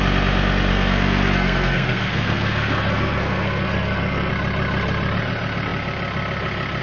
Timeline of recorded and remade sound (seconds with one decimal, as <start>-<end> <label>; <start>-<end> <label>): 0.0-0.7 recorded; 0.7-4.3 remade; 4.3-6.8 recorded